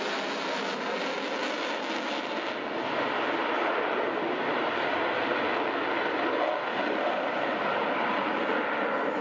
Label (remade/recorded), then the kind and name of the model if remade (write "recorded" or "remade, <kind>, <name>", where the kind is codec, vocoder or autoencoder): recorded